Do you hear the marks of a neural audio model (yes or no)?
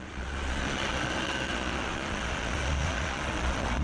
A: yes